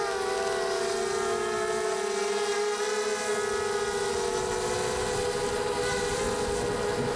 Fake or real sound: real